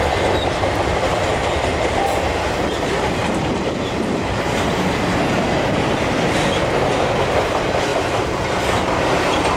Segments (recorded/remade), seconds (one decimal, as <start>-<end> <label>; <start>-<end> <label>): 0.0-3.2 recorded; 3.2-6.2 remade; 6.2-7.9 recorded; 7.9-8.6 remade; 8.6-9.6 recorded